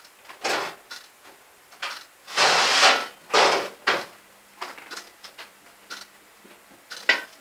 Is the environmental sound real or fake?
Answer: real